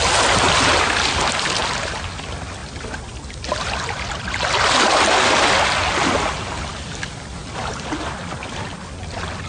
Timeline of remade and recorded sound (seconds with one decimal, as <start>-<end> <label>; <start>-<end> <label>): 0.0-9.5 recorded